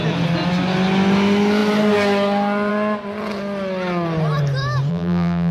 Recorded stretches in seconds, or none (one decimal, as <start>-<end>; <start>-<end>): 0.0-4.9